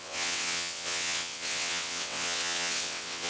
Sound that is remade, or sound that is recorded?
remade